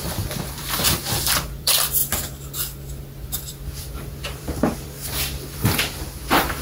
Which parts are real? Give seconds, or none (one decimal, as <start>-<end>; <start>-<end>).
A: 2.0-2.9